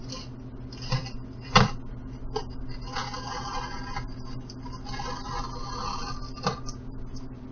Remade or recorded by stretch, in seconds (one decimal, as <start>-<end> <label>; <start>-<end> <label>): 0.0-7.5 recorded